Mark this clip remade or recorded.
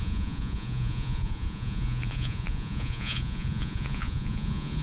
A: remade